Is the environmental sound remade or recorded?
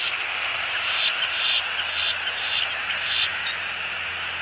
recorded